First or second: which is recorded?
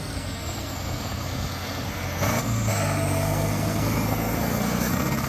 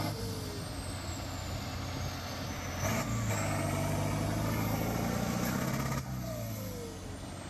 second